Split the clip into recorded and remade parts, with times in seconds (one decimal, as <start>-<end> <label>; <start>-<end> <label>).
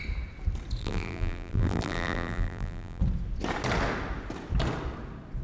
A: 0.0-0.8 recorded; 0.8-3.0 remade; 3.0-5.4 recorded